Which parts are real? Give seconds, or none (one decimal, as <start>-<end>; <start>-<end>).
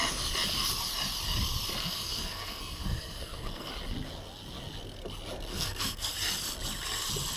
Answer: 0.0-1.8; 3.7-5.5; 6.1-7.4